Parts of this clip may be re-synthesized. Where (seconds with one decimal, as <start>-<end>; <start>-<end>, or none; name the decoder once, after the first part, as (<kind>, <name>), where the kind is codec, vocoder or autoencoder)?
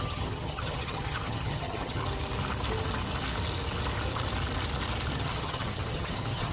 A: 0.0-2.0 (vocoder, HiFi-GAN); 5.2-6.5